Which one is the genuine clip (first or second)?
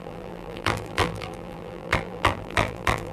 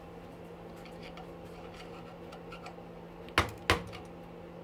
second